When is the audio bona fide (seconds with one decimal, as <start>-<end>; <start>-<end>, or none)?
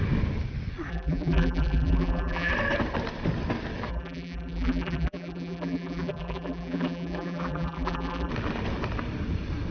0.0-0.9; 2.5-3.9; 8.3-9.7